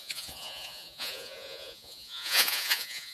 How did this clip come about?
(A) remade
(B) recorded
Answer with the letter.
A